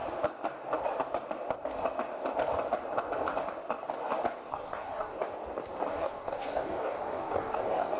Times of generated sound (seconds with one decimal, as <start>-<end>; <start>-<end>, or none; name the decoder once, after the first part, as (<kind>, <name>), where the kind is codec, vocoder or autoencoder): 4.5-5.2 (codec, DAC); 5.9-8.0